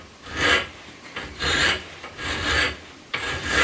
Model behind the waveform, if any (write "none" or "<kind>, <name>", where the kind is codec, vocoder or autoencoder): vocoder, BigVGAN v2